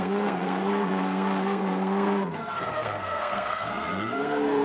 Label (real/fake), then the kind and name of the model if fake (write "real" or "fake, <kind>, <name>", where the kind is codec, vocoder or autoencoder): fake, codec, SNAC